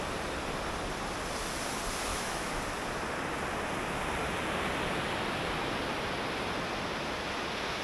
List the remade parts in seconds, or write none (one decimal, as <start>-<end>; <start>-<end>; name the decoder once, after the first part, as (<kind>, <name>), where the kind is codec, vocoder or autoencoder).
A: 2.1-2.6 (autoencoder, DAC-VAE)